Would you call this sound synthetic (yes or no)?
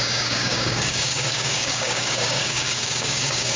yes